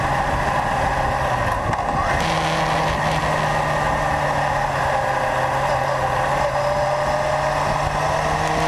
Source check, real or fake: real